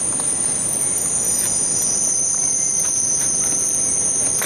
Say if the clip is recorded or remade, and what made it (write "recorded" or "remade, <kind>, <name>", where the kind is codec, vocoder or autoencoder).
recorded